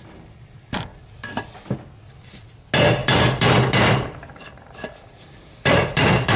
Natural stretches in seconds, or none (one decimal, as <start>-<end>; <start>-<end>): 0.0-3.0